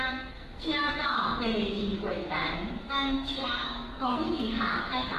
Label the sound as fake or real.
fake